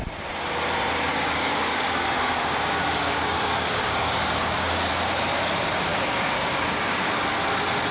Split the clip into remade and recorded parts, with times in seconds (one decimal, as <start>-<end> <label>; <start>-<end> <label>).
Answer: 0.0-1.1 recorded; 1.1-4.9 remade; 4.9-5.9 recorded; 5.9-7.1 remade; 7.1-7.9 recorded